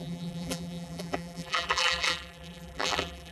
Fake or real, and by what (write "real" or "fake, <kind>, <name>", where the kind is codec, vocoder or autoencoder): fake, vocoder, BigVGAN v2